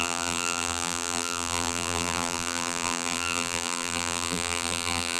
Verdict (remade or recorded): remade